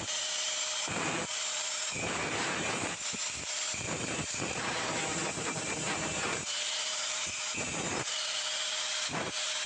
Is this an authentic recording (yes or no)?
no